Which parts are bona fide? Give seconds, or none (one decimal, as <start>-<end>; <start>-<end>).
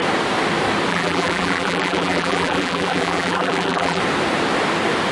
0.0-0.9; 4.0-5.1